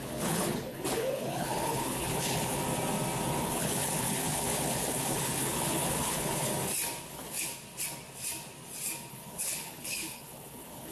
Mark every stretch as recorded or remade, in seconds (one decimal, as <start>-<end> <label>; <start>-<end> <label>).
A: 0.0-2.6 remade; 2.6-3.4 recorded; 3.4-6.5 remade; 6.5-7.1 recorded; 7.1-7.5 remade; 7.5-9.1 recorded; 9.1-10.9 remade